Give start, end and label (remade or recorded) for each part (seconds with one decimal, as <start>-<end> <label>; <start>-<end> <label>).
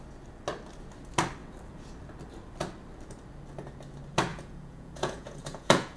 0.0-4.3 recorded; 4.3-6.0 remade